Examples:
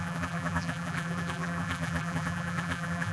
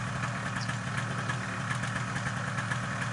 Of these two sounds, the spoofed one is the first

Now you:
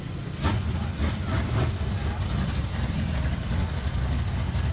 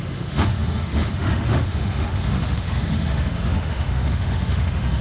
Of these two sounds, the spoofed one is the second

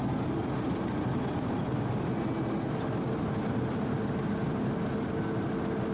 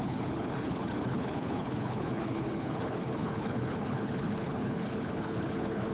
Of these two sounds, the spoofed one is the second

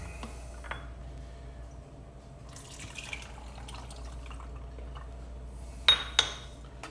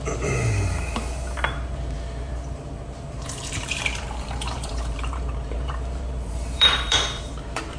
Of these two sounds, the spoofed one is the second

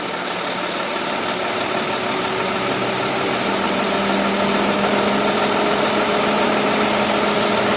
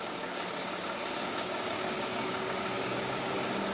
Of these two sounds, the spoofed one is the second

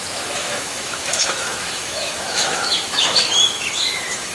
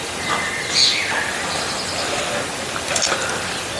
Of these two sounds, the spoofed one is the first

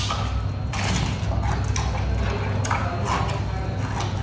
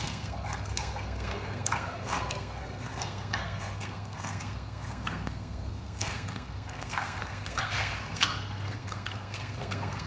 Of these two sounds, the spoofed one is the second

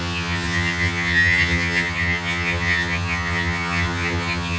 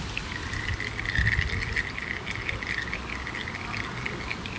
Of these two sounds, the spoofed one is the first